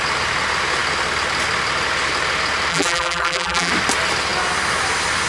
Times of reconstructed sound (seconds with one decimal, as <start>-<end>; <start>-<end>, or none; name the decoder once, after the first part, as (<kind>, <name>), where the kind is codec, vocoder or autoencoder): 2.7-3.7 (vocoder, BigVGAN v2)